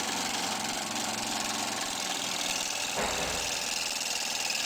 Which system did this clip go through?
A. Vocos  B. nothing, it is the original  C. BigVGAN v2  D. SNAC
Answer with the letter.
B